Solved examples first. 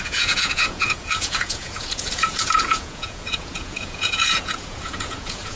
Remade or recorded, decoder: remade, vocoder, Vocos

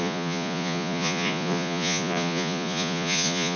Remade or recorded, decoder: remade, vocoder, Vocos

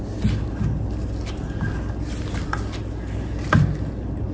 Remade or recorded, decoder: recorded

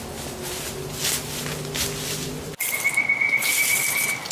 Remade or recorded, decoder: recorded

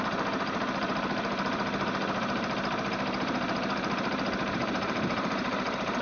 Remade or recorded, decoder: remade, vocoder, BigVGAN v2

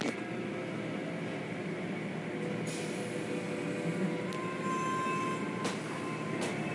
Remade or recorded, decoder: recorded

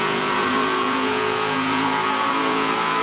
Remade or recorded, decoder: remade, vocoder, Vocos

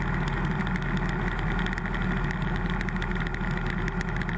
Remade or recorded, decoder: recorded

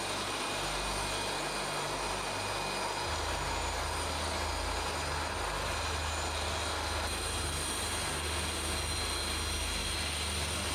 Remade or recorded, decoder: recorded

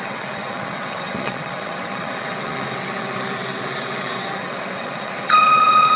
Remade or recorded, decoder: remade, vocoder, WaveNeXt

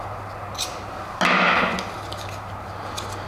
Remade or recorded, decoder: recorded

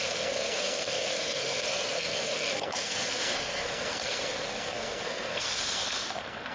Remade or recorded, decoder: remade, codec, SNAC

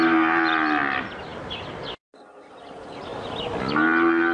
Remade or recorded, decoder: recorded